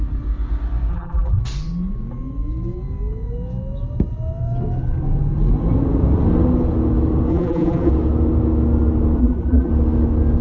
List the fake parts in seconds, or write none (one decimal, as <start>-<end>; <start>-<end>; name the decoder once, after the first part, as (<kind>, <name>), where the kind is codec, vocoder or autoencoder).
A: 0.9-1.4 (vocoder, BigVGAN v2); 7.3-7.9; 9.2-9.7